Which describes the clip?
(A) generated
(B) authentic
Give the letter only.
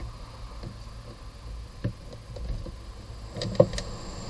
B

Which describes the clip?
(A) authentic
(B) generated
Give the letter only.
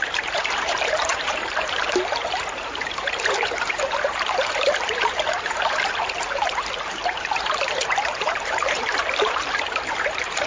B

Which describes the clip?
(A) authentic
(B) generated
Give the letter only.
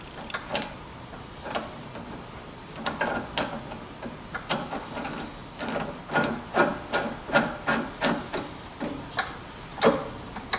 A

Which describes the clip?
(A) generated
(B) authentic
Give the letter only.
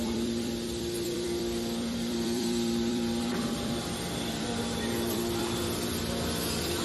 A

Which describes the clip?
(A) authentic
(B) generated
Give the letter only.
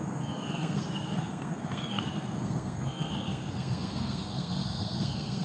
B